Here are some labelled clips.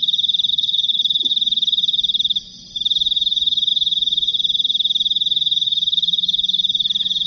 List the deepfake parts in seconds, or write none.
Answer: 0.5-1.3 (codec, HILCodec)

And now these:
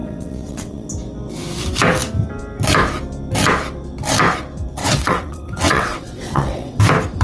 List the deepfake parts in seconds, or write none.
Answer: 0.0-0.9 (vocoder, WaveNeXt); 4.8-6.8